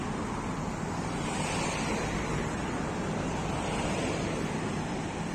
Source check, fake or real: fake